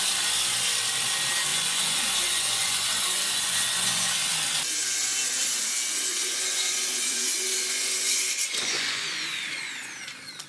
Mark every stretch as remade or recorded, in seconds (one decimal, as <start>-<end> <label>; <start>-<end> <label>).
0.0-1.5 recorded; 1.5-4.1 remade; 4.1-6.1 recorded; 6.1-10.0 remade; 10.0-10.5 recorded